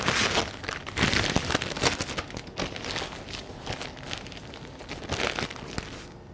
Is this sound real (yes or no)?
yes